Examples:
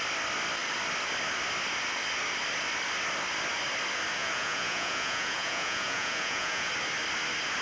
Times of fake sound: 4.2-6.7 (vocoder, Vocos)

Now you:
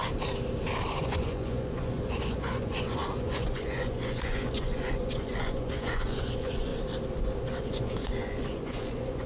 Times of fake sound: 1.0-6.7 (vocoder, Vocos); 7.6-9.3

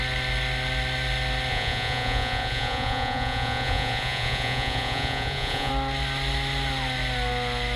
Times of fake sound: 1.5-5.7 (vocoder, Vocos)

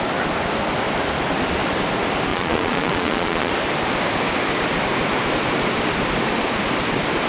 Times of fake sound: 2.3-3.5 (vocoder, Vocos)

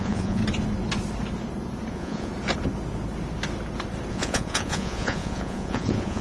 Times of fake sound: 0.0-0.4 (vocoder, Vocos); 1.9-2.3; 4.1-6.2

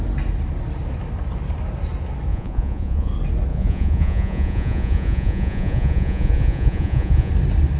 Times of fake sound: 2.3-3.1 (vocoder, Vocos); 3.5-7.3